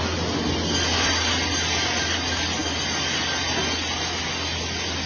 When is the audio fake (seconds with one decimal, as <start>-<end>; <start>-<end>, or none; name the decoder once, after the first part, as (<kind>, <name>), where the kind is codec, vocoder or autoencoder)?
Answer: none